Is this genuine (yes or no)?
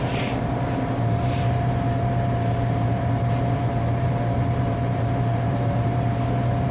no